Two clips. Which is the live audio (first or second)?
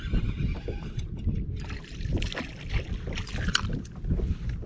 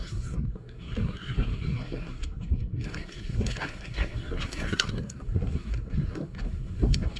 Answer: first